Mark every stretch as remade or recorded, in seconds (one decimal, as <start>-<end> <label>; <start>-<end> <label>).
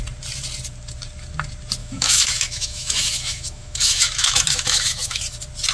0.0-1.8 recorded; 1.8-5.2 remade; 5.2-5.7 recorded